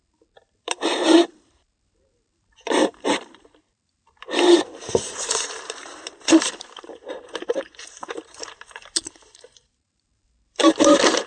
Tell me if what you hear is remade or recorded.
remade